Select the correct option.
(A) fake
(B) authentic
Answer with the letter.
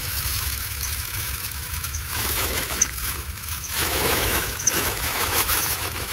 A